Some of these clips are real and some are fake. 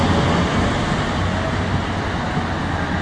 real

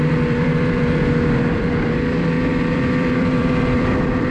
fake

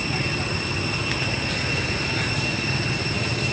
real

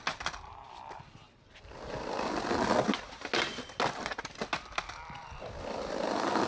real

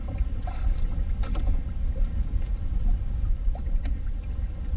real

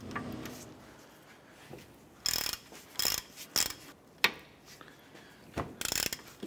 real